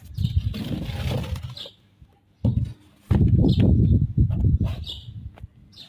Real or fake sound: real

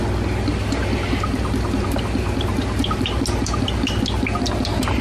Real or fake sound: real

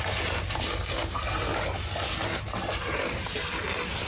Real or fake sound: real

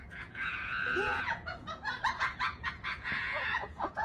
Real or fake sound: fake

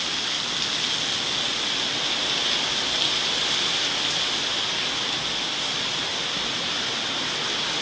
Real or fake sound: real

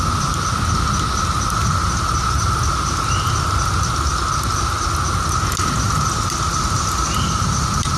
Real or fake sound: real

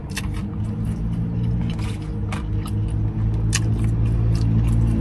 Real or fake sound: real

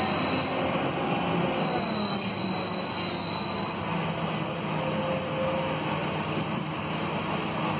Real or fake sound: real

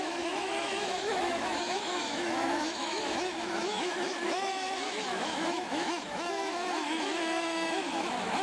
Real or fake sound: fake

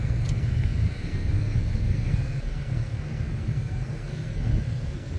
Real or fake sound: fake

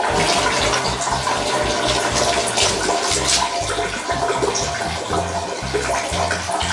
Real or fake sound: real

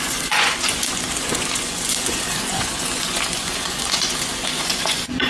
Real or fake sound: fake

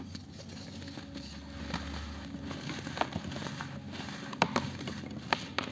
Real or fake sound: real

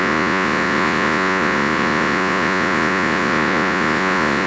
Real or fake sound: fake